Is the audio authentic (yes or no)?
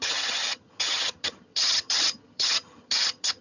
no